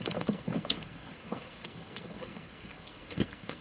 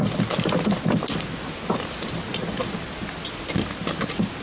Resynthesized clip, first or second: first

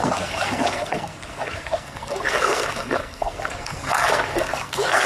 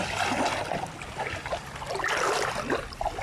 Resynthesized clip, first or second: first